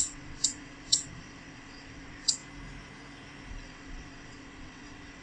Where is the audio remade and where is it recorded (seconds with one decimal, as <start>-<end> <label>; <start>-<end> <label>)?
0.0-2.4 remade; 2.4-3.5 recorded; 3.5-5.2 remade